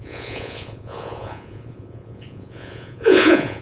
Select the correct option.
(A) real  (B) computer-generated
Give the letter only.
B